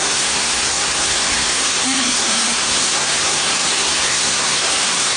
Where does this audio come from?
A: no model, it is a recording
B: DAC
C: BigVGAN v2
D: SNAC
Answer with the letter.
D